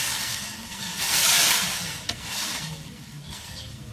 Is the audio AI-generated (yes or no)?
yes